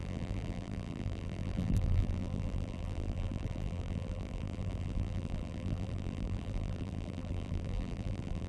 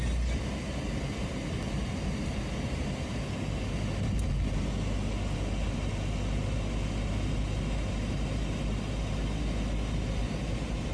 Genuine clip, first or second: second